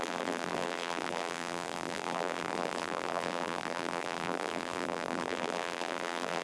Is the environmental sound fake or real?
fake